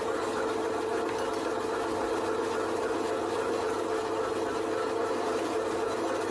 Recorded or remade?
recorded